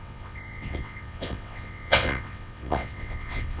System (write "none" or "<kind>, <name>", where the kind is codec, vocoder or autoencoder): vocoder, WaveNeXt